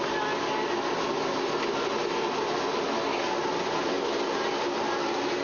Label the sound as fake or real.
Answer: real